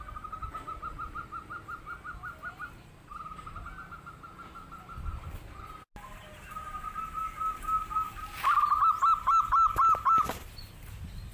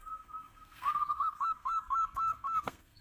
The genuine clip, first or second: first